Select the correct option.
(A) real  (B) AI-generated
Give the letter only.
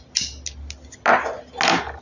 A